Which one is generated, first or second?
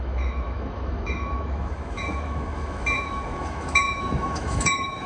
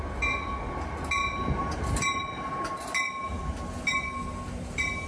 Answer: first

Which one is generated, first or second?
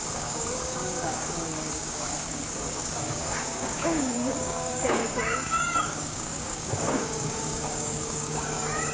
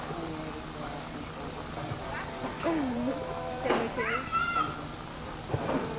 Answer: first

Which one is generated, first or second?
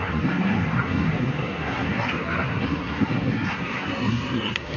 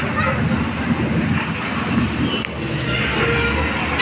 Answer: first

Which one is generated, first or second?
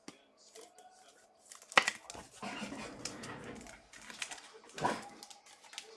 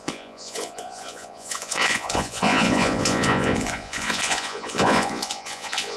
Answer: second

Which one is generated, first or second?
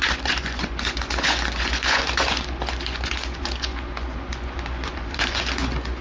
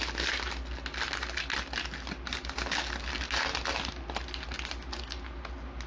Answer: first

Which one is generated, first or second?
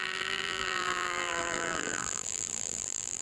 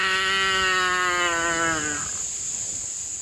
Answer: first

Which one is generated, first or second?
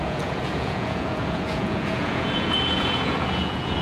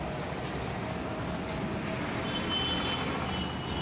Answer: first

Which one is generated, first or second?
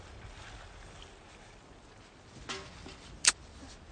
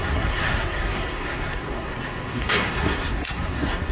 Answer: second